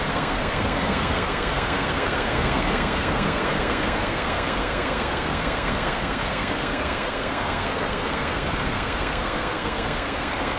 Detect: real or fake fake